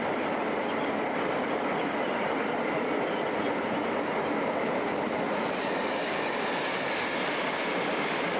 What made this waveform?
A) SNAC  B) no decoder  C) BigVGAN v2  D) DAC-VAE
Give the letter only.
B